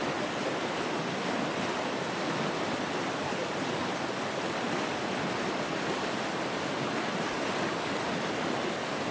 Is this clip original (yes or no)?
yes